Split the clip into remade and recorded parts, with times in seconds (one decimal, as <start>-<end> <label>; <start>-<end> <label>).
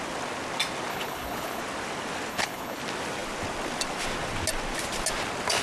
0.0-0.9 recorded; 0.9-1.6 remade; 1.6-2.3 recorded; 2.3-2.8 remade; 2.8-5.6 recorded